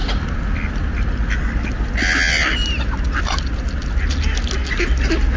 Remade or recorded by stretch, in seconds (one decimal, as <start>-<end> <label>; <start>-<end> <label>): 0.0-5.4 recorded